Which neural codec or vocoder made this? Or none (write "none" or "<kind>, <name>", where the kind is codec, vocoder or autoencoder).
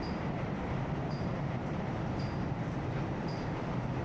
vocoder, BigVGAN v2